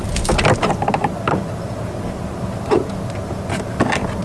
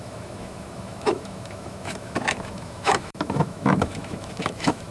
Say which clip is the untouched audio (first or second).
first